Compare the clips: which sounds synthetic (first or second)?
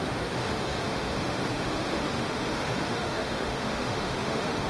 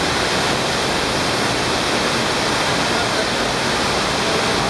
first